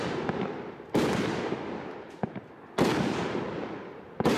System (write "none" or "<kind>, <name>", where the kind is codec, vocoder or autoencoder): none